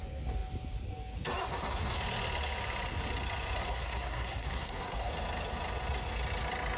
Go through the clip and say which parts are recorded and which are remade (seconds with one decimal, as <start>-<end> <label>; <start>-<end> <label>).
0.0-3.6 recorded; 3.6-5.1 remade; 5.1-6.8 recorded